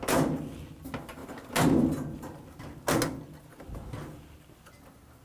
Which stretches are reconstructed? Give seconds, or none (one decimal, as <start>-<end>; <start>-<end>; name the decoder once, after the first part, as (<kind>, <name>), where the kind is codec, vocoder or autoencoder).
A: none